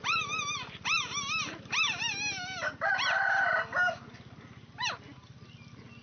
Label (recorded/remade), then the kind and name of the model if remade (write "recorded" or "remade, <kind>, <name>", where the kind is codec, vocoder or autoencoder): recorded